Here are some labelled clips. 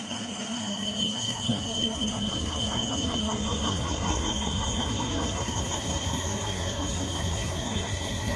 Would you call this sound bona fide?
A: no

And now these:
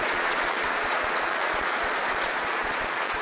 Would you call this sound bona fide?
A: no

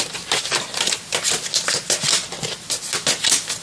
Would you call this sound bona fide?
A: yes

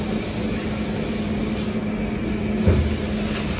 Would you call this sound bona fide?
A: yes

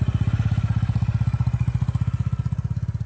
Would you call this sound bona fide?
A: yes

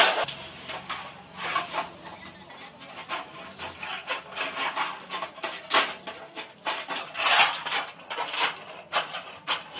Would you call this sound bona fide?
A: yes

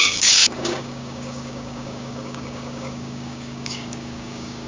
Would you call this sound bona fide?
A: no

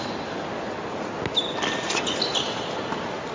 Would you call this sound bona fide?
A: yes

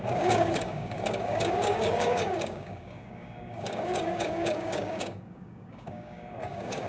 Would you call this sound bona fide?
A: no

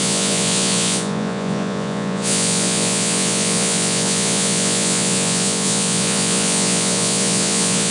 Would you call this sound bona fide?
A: no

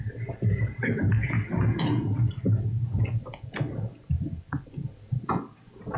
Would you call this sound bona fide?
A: yes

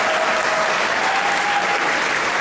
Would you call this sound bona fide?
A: yes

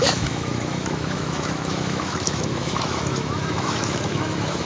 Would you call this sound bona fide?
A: no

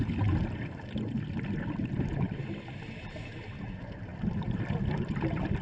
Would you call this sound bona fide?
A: yes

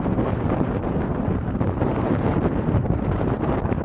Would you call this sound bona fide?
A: no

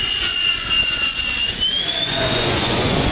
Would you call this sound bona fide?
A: no